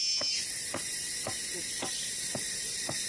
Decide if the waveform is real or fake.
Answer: real